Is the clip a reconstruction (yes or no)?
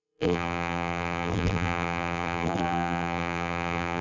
yes